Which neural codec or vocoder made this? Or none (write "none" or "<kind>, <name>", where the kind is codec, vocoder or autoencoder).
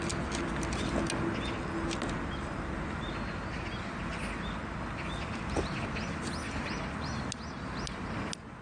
none